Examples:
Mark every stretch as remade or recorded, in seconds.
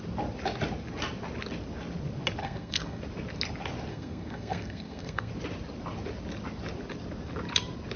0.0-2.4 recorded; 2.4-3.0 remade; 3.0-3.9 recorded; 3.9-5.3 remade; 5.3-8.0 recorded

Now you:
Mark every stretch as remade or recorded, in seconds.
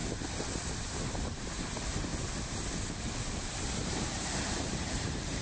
0.0-2.1 remade; 2.1-3.5 recorded; 3.5-5.4 remade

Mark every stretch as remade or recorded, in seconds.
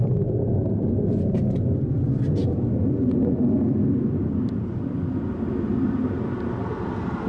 0.0-7.3 recorded